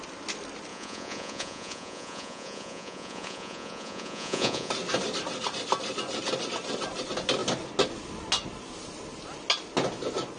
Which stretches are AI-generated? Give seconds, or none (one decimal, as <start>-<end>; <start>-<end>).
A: 0.7-4.7